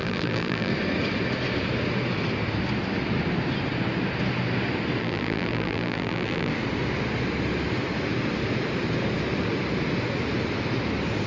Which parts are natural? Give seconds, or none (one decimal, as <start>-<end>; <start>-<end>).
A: 0.7-5.0; 6.5-11.3